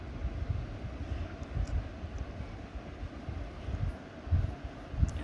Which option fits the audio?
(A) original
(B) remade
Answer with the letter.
A